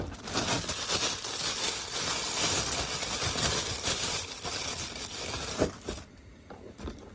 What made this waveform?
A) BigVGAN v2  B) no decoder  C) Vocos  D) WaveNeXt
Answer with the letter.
B